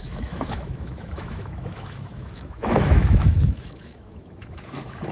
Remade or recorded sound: remade